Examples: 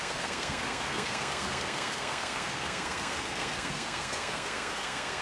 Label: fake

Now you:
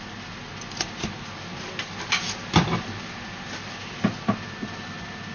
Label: real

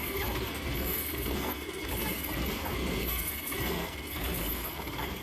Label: fake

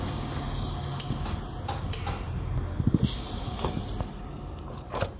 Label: real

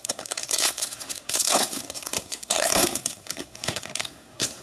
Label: fake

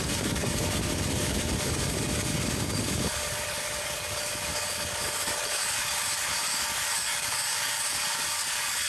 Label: fake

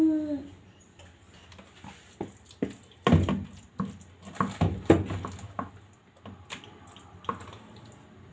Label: real